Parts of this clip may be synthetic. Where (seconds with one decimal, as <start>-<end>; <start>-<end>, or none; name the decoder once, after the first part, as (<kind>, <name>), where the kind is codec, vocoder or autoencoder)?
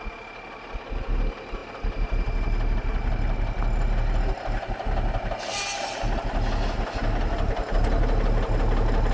none